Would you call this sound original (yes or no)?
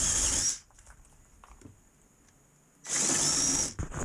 yes